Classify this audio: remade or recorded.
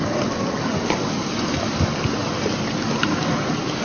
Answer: recorded